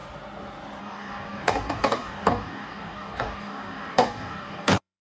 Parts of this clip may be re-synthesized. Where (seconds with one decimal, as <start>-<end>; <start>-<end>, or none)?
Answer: 0.8-5.0